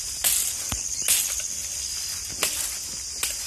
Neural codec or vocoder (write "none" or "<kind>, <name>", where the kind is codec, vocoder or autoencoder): none